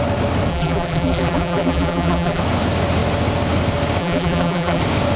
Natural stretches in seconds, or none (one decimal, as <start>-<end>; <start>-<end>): 0.0-0.5; 2.4-4.0; 4.8-5.2